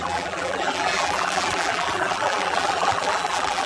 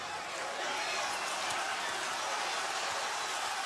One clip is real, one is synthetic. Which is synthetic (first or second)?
first